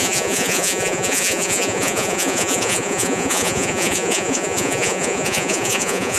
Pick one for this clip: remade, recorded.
remade